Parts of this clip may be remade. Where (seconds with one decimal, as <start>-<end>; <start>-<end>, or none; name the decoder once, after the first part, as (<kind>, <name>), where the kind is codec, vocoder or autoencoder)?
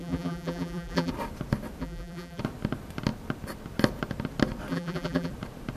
0.0-1.1 (vocoder, BigVGAN v2); 1.8-2.4; 4.7-5.3